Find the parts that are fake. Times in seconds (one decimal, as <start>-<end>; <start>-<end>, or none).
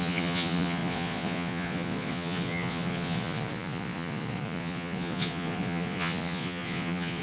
0.0-7.2